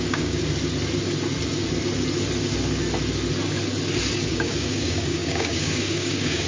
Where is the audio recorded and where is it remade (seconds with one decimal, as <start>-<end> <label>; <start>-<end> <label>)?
0.0-0.4 remade; 0.4-4.3 recorded; 4.3-6.5 remade